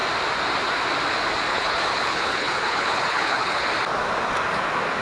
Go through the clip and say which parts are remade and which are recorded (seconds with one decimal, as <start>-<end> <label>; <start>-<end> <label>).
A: 0.0-1.5 recorded; 1.5-3.7 remade; 3.7-5.0 recorded